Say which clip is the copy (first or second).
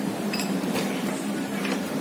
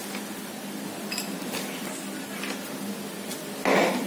first